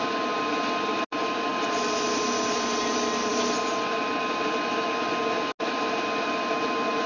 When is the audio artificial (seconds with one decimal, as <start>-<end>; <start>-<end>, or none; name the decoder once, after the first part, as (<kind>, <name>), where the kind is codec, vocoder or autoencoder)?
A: none